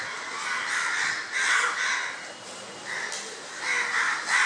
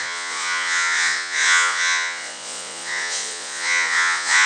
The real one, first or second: first